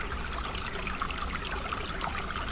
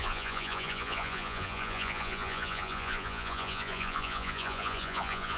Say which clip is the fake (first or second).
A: second